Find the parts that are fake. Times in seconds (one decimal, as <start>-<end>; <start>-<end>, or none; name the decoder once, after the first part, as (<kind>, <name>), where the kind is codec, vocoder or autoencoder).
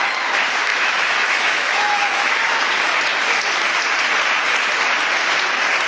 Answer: 0.7-2.7 (autoencoder, DAC-VAE)